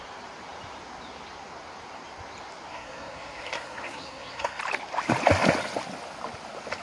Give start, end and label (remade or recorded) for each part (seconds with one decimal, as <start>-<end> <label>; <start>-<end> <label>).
0.0-2.7 recorded; 2.7-4.6 remade; 4.6-6.8 recorded